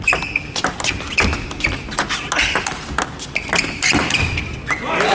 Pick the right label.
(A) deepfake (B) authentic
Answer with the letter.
B